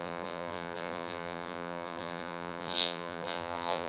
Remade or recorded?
remade